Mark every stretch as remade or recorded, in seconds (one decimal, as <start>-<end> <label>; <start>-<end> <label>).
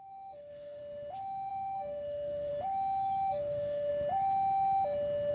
0.0-0.8 remade; 0.8-1.5 recorded; 1.5-2.5 remade; 2.5-3.3 recorded; 3.3-3.9 remade; 3.9-5.3 recorded